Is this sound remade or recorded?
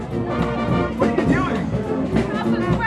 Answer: recorded